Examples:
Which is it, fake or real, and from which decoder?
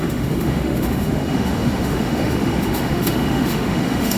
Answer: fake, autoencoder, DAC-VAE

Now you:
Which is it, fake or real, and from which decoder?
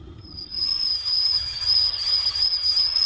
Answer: fake, vocoder, HiFi-GAN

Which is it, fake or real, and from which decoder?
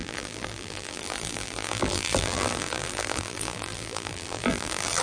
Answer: fake, vocoder, BigVGAN v2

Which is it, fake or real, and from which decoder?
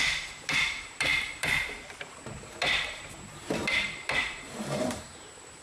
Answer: fake, vocoder, BigVGAN v2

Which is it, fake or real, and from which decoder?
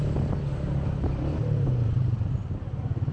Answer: real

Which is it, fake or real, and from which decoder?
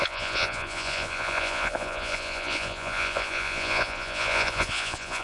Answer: fake, vocoder, Vocos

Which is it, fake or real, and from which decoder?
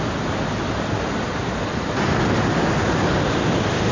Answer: real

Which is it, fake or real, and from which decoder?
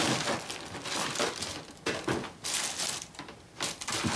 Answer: real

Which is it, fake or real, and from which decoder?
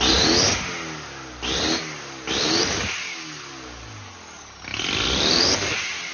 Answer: real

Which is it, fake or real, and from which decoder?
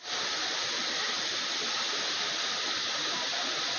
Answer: fake, vocoder, BigVGAN v2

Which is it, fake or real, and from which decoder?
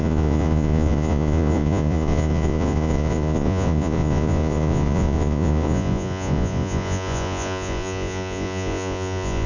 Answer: fake, vocoder, Vocos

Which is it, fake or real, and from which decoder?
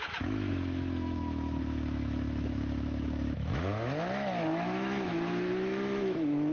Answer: fake, autoencoder, DAC-VAE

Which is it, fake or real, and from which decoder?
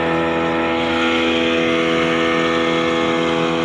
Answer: real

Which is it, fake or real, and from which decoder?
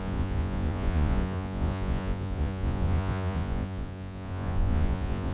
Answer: fake, vocoder, Vocos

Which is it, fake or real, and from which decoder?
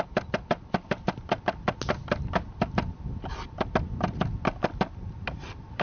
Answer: real